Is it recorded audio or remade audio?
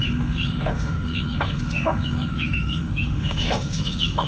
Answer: remade